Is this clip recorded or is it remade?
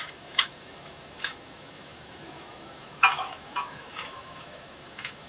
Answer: remade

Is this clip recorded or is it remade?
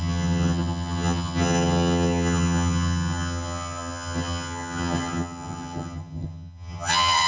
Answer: remade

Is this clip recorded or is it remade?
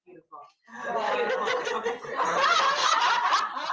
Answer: recorded